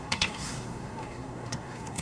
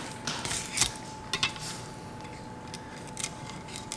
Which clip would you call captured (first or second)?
second